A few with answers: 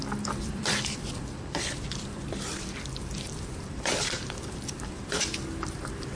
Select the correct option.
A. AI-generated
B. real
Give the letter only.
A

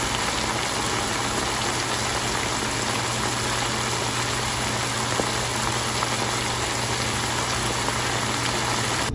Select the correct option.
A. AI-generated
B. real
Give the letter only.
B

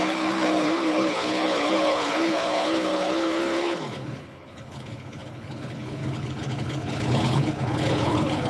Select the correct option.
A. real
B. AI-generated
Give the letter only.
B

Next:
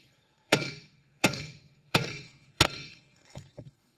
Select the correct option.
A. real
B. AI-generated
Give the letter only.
B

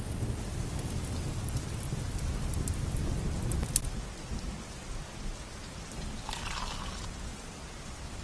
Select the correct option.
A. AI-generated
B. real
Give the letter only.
B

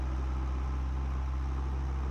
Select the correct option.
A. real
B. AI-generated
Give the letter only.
A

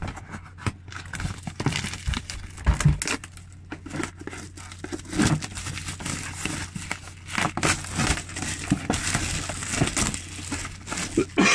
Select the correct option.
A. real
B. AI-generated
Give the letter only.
A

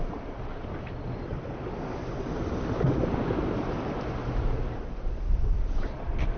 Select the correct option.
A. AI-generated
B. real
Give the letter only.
B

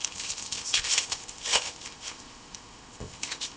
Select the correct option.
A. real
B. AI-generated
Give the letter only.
B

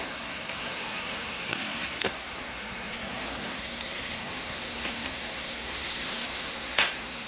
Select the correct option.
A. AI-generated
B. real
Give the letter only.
A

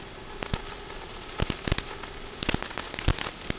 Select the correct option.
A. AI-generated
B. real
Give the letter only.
B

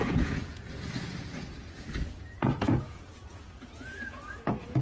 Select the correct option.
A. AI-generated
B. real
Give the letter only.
A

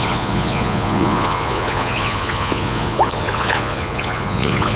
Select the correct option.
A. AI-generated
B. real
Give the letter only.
A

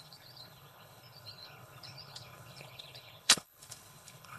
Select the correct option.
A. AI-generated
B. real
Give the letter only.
A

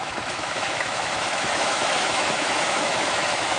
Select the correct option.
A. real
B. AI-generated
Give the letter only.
B